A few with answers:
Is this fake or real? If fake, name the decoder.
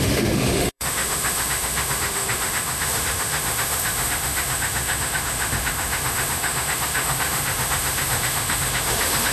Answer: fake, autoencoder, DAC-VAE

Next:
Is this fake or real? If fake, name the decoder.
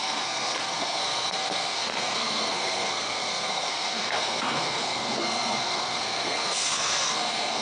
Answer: fake, codec, SNAC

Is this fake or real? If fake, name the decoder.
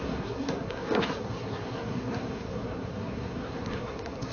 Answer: fake, codec, SNAC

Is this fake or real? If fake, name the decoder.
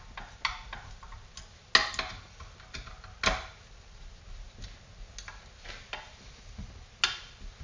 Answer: real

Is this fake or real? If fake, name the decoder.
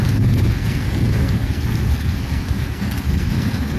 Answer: fake, codec, SNAC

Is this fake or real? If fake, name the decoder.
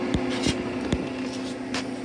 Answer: real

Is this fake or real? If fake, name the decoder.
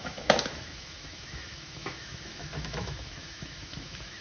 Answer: fake, autoencoder, DAC-VAE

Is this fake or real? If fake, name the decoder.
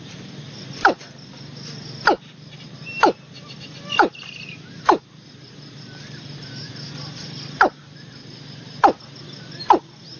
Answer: real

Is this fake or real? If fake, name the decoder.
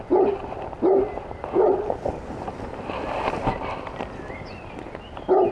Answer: fake, vocoder, BigVGAN v2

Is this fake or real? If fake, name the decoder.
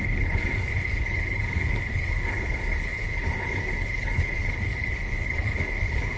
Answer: fake, codec, HILCodec